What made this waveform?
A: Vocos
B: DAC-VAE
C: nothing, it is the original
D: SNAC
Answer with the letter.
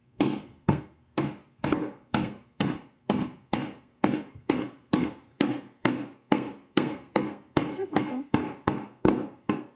D